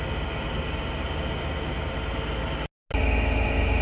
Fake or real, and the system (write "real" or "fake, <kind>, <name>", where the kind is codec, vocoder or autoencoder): real